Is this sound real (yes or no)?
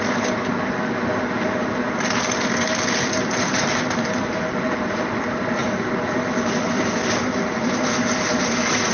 yes